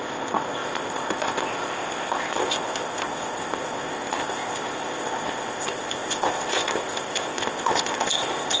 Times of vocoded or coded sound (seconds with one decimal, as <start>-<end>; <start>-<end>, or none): 0.0-8.6